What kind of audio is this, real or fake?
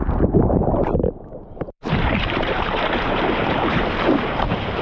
fake